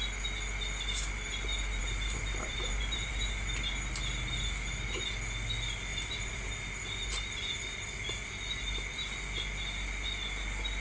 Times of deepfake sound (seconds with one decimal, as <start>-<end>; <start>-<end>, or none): 1.8-3.1; 5.9-6.5